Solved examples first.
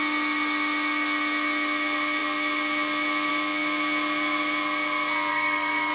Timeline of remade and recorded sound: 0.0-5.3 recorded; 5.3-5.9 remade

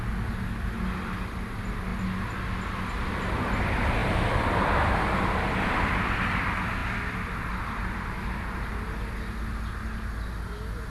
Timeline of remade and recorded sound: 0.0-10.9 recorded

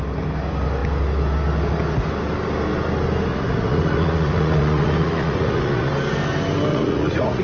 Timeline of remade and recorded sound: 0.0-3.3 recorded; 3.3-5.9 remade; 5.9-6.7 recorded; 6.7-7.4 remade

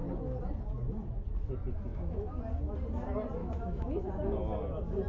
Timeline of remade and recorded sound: 0.0-1.9 recorded; 1.9-2.4 remade; 2.4-3.4 recorded; 3.4-4.1 remade; 4.1-5.1 recorded

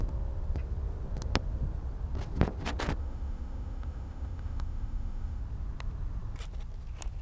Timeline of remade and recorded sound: 0.0-3.0 recorded; 3.0-5.4 remade; 5.4-7.2 recorded

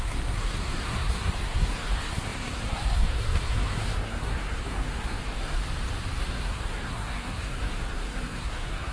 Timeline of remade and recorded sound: 0.0-5.6 remade; 5.6-6.2 recorded; 6.2-8.9 remade

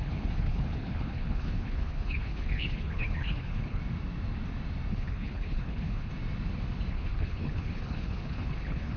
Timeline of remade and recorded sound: 0.0-3.8 remade; 3.8-4.9 recorded; 4.9-6.1 remade; 6.1-6.9 recorded; 6.9-9.0 remade